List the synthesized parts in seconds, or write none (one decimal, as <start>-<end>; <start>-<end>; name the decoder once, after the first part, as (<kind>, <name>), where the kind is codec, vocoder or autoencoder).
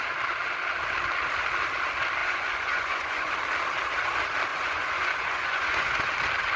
2.2-3.3 (vocoder, Vocos); 4.5-6.1